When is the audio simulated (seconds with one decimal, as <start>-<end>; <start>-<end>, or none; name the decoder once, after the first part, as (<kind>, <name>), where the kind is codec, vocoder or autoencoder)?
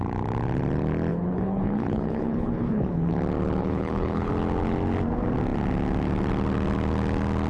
1.1-3.1 (codec, HILCodec); 3.6-4.3